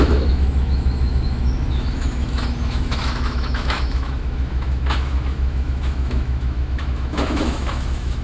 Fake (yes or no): yes